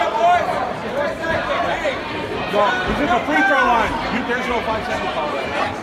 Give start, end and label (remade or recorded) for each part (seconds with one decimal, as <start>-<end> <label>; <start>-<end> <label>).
0.0-5.8 remade